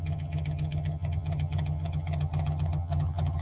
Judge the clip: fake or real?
fake